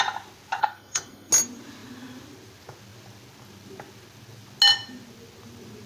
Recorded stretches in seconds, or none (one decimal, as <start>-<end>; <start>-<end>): 0.0-0.6; 1.3-5.9